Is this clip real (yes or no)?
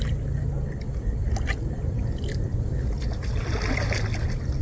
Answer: yes